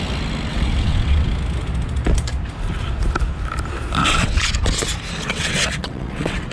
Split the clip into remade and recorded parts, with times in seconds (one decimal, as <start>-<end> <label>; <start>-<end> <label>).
0.0-0.5 recorded; 0.5-1.3 remade; 1.3-4.0 recorded; 4.0-4.5 remade; 4.5-5.3 recorded; 5.3-6.5 remade